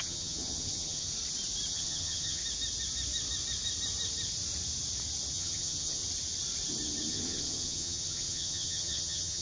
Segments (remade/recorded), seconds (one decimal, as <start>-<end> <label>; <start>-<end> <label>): 0.0-1.1 remade; 1.1-1.7 recorded; 1.7-2.4 remade; 2.4-5.3 recorded; 5.3-6.0 remade; 6.0-7.1 recorded; 7.1-9.4 remade